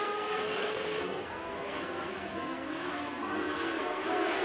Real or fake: fake